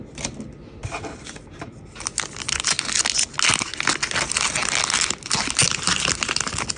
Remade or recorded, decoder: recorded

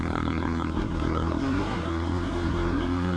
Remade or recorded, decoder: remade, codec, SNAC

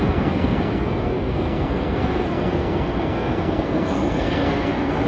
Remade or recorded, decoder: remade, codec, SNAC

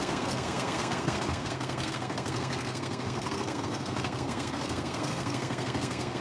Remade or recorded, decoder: remade, codec, SNAC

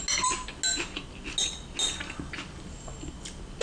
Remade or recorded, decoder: recorded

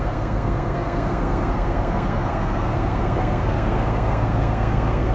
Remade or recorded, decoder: remade, codec, SNAC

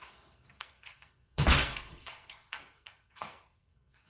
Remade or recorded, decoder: remade, codec, SNAC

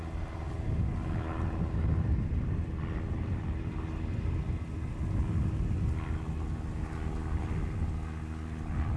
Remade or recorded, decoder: recorded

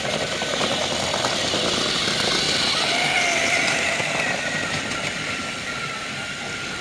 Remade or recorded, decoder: recorded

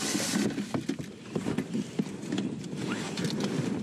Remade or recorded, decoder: recorded